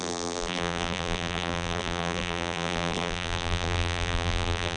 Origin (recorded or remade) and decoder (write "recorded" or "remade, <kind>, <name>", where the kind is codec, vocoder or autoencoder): remade, vocoder, BigVGAN v2